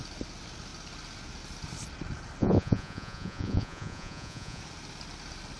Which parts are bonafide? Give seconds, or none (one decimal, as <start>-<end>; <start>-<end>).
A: 0.0-2.4; 4.6-5.6